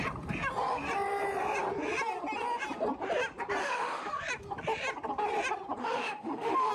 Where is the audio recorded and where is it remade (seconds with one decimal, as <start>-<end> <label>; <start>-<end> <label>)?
0.0-3.6 recorded; 3.6-4.1 remade; 4.1-5.8 recorded; 5.8-6.7 remade